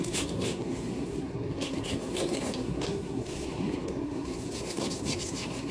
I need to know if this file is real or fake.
fake